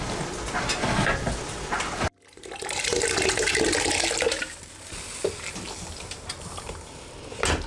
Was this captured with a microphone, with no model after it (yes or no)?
yes